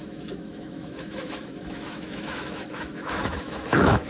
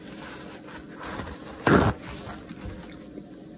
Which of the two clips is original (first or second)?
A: second